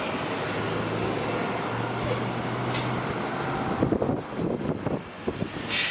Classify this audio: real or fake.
real